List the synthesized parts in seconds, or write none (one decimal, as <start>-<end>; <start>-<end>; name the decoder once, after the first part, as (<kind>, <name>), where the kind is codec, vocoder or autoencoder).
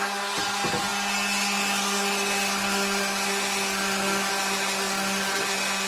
none